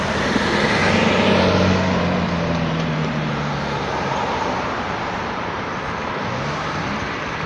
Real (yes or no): no